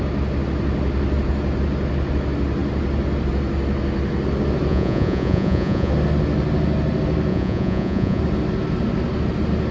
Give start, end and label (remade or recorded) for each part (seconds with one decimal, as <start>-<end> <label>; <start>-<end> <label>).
0.0-4.7 recorded; 4.7-5.9 remade; 5.9-7.3 recorded; 7.3-8.2 remade; 8.2-9.7 recorded